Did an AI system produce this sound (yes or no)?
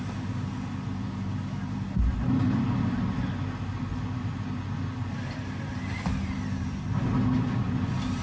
no